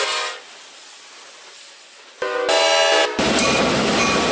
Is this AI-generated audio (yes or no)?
no